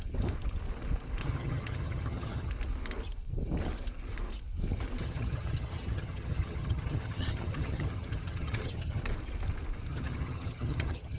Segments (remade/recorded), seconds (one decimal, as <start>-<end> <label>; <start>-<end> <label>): 0.0-1.2 recorded; 1.2-2.5 remade; 2.5-5.0 recorded; 5.0-9.0 remade; 9.0-9.9 recorded; 9.9-11.2 remade